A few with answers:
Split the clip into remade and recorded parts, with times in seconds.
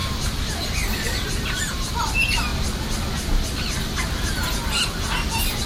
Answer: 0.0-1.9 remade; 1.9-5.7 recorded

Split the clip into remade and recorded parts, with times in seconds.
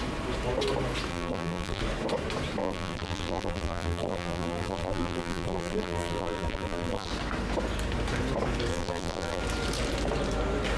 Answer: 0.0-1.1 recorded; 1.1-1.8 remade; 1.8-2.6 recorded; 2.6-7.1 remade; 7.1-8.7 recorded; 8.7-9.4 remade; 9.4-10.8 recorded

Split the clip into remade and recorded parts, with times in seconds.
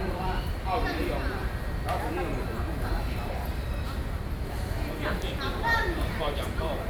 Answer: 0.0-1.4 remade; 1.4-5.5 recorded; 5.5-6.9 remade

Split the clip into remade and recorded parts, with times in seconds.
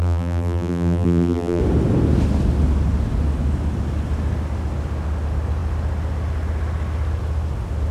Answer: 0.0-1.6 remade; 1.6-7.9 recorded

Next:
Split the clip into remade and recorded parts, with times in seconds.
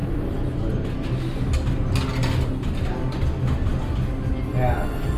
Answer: 0.0-5.2 recorded